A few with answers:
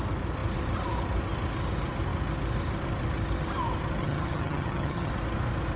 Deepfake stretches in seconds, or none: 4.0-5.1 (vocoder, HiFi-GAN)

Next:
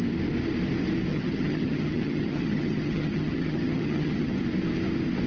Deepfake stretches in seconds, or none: 1.1-4.3 (vocoder, HiFi-GAN)

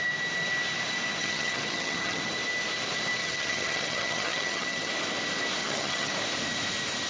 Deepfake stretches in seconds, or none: 1.2-2.2 (vocoder, HiFi-GAN); 3.2-4.9; 5.6-6.1

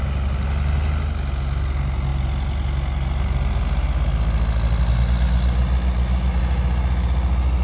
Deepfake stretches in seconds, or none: none

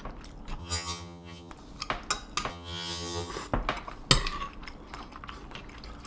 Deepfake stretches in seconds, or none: 0.6-1.5 (vocoder, HiFi-GAN); 2.5-3.3

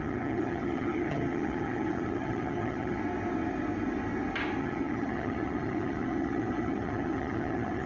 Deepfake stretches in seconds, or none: 0.0-3.0 (vocoder, HiFi-GAN); 4.6-7.9

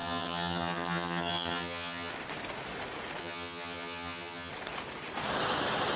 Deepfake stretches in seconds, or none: 0.0-2.1 (vocoder, HiFi-GAN); 3.2-4.5

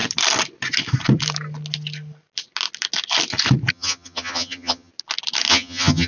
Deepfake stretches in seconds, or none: 3.7-4.9 (vocoder, HiFi-GAN); 5.5-6.1